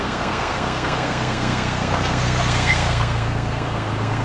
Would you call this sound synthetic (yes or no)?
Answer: yes